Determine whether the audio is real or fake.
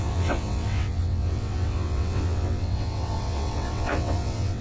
fake